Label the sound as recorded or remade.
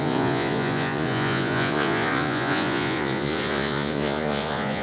remade